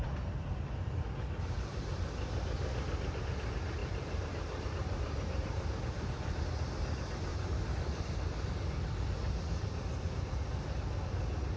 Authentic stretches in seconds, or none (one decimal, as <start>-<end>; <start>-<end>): 0.0-3.8; 6.4-7.3; 8.5-11.6